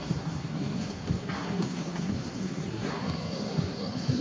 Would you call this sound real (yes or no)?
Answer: no